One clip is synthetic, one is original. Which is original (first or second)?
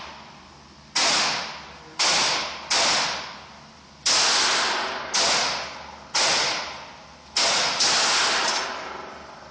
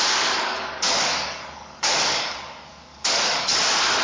first